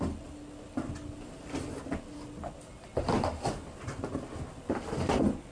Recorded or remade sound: recorded